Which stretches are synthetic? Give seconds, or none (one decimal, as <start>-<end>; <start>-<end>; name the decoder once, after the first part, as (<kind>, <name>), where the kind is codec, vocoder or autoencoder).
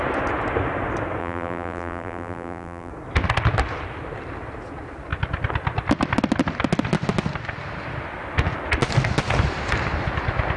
1.2-2.9 (vocoder, BigVGAN v2)